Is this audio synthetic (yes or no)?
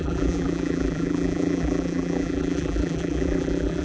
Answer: yes